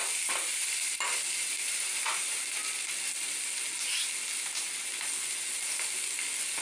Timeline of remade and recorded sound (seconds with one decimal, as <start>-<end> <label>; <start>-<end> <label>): 0.0-2.6 remade; 2.6-6.6 recorded